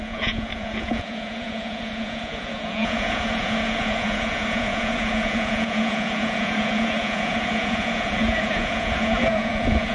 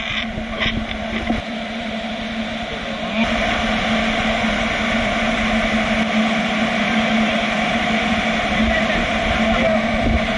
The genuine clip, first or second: second